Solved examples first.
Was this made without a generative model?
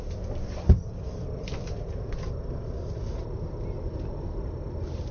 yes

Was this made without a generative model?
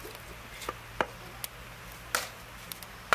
yes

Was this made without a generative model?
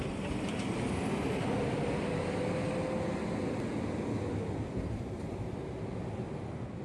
yes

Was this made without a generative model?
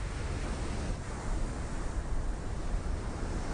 yes